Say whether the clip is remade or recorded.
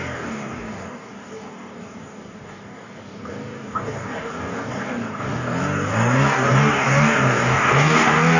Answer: remade